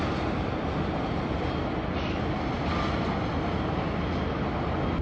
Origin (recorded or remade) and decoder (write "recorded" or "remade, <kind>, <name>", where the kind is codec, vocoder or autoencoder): recorded